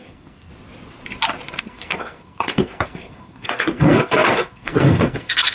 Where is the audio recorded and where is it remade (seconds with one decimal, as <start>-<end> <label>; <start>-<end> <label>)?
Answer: 0.0-0.5 remade; 0.5-1.6 recorded; 1.6-5.5 remade